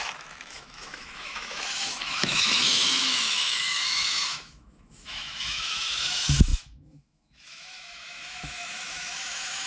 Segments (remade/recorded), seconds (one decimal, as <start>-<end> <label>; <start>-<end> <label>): 0.0-9.7 remade